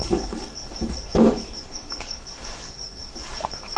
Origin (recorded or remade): remade